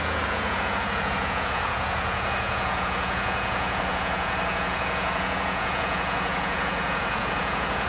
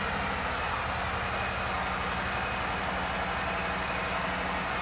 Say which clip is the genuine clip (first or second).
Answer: second